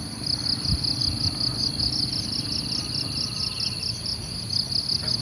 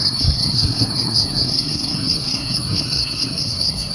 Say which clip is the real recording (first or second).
first